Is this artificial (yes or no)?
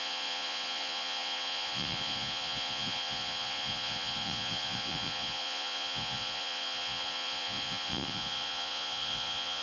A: yes